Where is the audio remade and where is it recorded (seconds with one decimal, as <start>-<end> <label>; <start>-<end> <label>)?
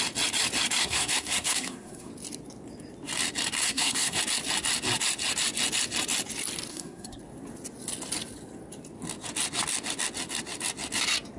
0.0-0.8 recorded; 0.8-2.1 remade; 2.1-3.6 recorded; 3.6-4.2 remade; 4.2-6.7 recorded; 6.7-7.2 remade; 7.2-11.4 recorded